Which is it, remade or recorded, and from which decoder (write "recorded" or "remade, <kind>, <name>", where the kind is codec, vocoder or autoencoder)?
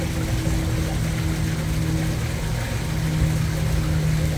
recorded